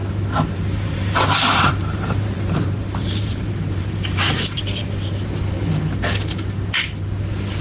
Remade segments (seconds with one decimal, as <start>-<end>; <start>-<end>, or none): 0.0-4.6